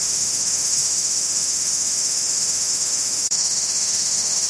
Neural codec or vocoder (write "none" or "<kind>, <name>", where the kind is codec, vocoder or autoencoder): autoencoder, DAC-VAE